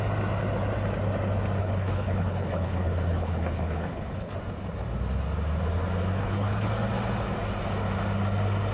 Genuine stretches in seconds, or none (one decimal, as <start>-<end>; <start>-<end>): 0.0-1.6; 4.3-6.2; 6.7-8.7